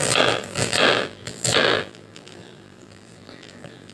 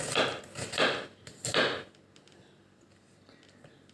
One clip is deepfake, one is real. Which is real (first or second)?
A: second